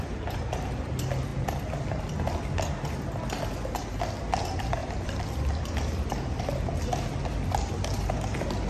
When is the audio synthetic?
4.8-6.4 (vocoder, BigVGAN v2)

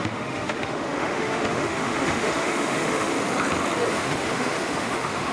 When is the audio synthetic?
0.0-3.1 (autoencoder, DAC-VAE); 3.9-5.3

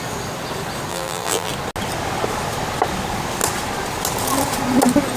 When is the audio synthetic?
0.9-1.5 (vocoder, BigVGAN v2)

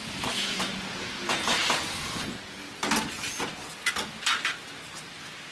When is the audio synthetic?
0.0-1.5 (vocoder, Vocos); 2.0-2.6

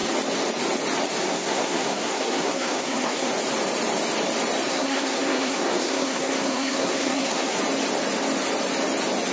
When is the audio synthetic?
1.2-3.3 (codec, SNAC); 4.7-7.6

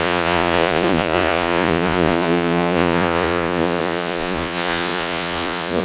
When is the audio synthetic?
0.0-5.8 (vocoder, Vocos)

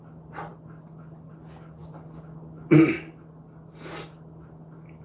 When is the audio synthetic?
none